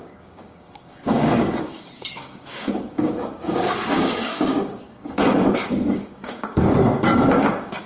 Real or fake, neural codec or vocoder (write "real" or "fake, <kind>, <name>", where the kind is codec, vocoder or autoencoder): fake, codec, DAC